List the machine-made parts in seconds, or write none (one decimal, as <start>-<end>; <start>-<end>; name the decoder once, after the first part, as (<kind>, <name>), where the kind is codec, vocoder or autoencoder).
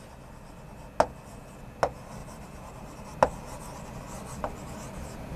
2.2-3.0 (vocoder, BigVGAN v2)